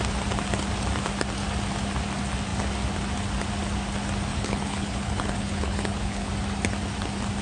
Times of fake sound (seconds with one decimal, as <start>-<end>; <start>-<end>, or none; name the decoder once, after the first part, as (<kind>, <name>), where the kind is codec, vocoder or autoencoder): 4.3-6.3 (codec, HILCodec)